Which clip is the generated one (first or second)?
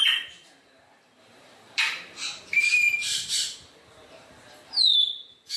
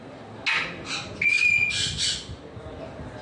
first